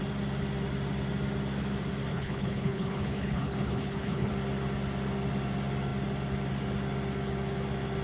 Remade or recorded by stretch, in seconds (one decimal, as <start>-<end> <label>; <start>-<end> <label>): 0.0-2.1 recorded; 2.1-4.3 remade; 4.3-8.0 recorded